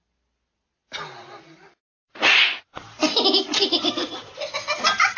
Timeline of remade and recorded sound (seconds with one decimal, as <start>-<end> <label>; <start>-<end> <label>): 0.0-3.5 recorded; 3.5-4.5 remade; 4.5-5.2 recorded

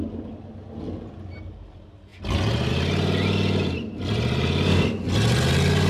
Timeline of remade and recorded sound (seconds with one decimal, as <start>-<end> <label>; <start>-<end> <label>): 0.0-5.9 recorded

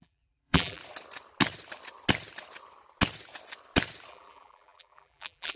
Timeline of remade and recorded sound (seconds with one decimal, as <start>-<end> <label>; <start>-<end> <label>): 0.0-0.8 remade; 0.8-4.1 recorded; 4.1-5.5 remade

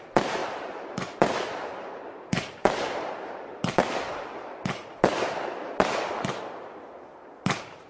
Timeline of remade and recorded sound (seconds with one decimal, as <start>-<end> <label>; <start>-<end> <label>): 0.0-0.4 recorded; 0.4-4.5 remade; 4.5-7.9 recorded

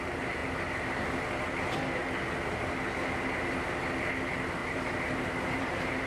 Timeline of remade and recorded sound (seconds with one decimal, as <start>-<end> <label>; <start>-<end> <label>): 0.0-4.6 recorded; 4.6-6.1 remade

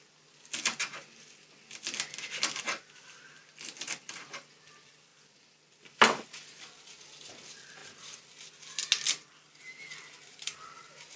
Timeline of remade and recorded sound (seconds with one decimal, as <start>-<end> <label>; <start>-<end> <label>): 0.0-7.8 recorded; 7.8-8.5 remade; 8.5-11.2 recorded